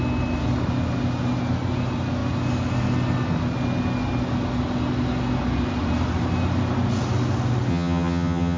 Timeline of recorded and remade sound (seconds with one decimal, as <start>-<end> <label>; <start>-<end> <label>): 0.0-7.7 recorded; 7.7-8.6 remade